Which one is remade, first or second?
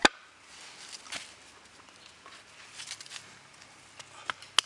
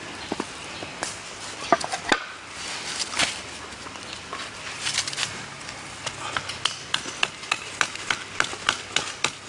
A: second